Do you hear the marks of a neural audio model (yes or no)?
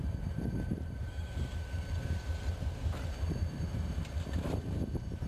yes